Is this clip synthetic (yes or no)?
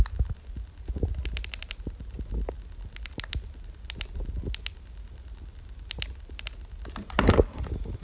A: no